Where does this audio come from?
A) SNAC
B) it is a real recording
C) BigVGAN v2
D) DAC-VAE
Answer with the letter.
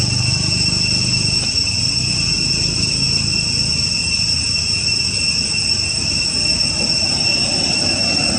B